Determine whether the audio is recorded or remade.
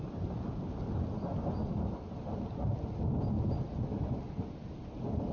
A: recorded